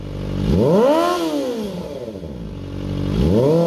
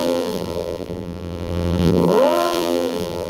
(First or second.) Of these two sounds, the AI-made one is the second